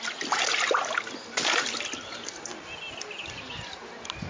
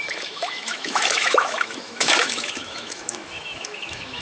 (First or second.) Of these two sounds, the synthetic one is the second